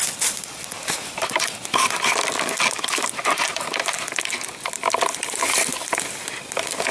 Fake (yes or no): no